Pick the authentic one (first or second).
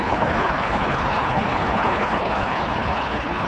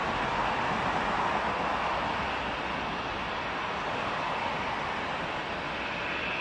second